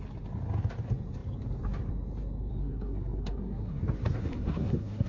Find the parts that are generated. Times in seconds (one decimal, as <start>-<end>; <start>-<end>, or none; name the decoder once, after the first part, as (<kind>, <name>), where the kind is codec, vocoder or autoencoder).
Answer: 2.5-3.8 (codec, SNAC); 4.2-5.1